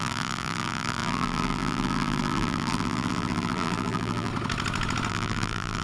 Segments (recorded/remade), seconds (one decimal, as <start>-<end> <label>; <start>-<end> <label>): 0.0-4.3 remade; 4.3-5.1 recorded; 5.1-5.8 remade